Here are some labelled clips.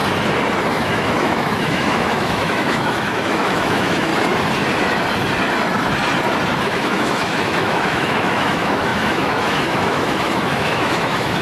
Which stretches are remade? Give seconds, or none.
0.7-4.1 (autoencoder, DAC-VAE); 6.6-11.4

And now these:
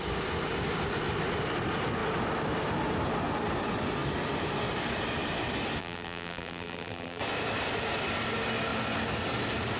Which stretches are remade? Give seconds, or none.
5.8-7.2 (vocoder, BigVGAN v2)

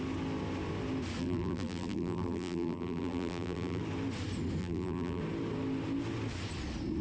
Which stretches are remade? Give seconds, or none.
1.2-3.8 (vocoder, BigVGAN v2); 4.6-5.2

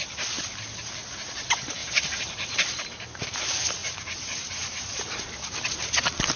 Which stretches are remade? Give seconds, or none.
1.8-2.6 (vocoder, BigVGAN v2); 3.8-5.5